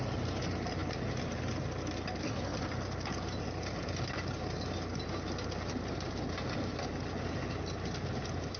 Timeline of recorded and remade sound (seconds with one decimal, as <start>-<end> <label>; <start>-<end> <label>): 0.0-8.6 recorded